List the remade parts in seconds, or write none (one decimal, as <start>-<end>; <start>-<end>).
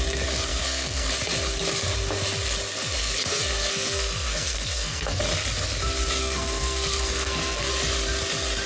0.5-1.1; 3.0-5.2; 6.2-7.7